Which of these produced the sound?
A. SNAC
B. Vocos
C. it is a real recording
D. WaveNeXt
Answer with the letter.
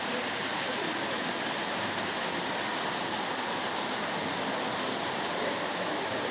C